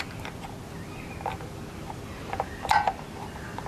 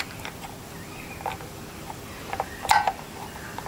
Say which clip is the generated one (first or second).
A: second